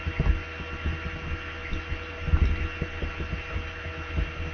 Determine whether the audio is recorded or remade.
recorded